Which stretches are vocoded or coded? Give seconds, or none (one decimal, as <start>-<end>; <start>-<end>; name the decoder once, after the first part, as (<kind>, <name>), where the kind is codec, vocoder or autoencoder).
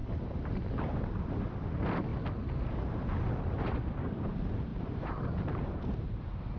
0.0-0.5 (vocoder, BigVGAN v2); 4.7-6.1